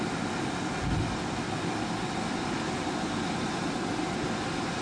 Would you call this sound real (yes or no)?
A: yes